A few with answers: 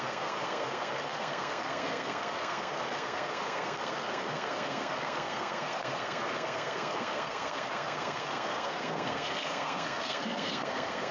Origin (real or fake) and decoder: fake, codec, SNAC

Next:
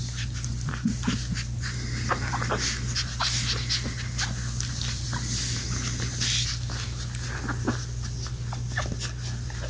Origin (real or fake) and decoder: real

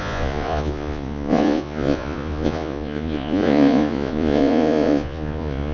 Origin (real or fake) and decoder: fake, vocoder, Vocos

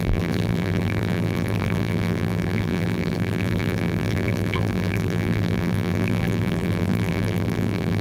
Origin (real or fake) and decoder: fake, vocoder, BigVGAN v2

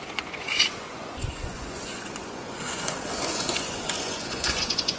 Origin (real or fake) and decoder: fake, vocoder, Vocos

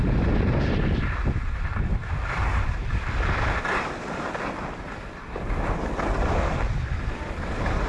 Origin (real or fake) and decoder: real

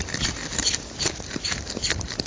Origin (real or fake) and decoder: real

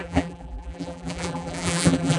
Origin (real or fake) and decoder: fake, vocoder, BigVGAN v2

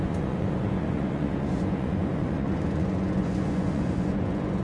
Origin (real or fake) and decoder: fake, vocoder, Vocos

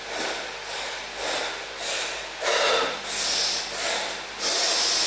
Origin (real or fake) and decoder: real